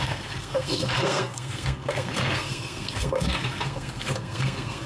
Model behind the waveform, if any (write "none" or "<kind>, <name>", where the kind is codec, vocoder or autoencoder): codec, SNAC